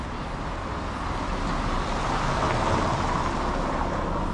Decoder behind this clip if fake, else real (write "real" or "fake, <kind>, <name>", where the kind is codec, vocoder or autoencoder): real